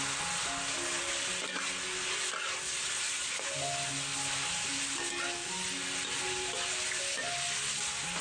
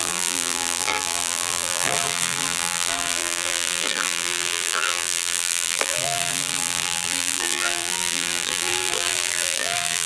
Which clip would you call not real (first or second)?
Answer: second